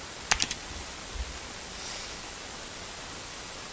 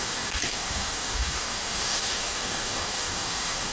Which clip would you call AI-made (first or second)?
second